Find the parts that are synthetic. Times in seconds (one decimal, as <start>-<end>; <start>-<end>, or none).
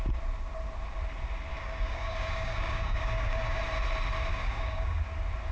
1.5-3.6; 4.3-5.0